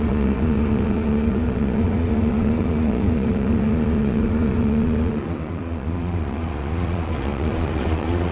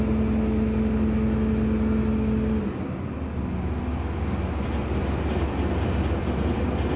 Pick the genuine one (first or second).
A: second